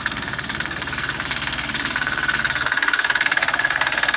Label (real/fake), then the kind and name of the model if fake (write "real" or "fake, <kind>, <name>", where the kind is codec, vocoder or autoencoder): fake, codec, SNAC